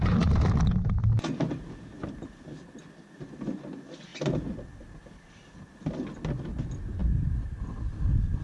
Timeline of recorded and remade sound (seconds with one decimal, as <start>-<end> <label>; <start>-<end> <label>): 0.0-8.4 recorded